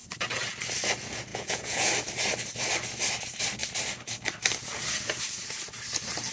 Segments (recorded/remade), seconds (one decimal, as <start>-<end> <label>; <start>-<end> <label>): 0.0-1.3 recorded; 1.3-1.9 remade; 1.9-6.3 recorded